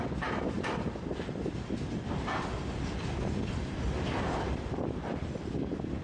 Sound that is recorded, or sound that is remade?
recorded